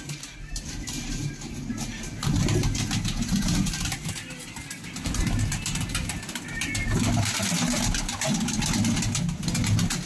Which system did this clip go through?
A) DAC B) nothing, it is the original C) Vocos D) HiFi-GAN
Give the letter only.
B